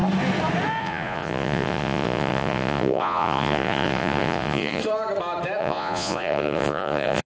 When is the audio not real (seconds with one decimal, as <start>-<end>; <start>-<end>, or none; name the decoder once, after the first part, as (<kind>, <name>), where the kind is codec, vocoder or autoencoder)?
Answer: 0.8-4.8 (vocoder, Vocos); 5.6-7.3